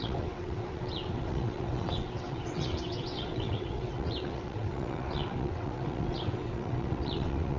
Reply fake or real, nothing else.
fake